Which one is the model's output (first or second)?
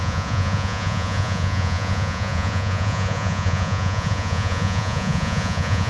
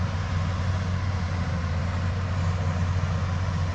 first